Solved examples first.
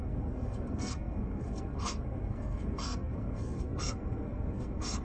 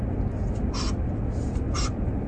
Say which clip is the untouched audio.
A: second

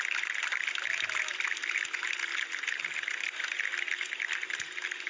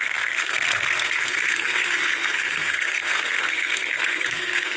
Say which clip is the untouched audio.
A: first